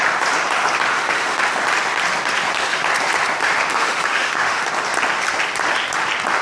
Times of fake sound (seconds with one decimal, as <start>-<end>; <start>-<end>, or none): 0.9-1.4; 3.7-4.6